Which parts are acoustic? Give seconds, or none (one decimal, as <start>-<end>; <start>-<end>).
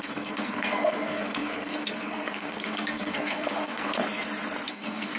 4.0-4.7